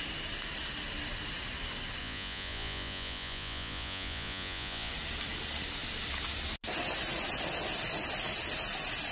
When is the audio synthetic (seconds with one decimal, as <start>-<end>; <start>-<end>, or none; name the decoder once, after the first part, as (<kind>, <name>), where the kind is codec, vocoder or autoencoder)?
2.0-4.9 (vocoder, Vocos)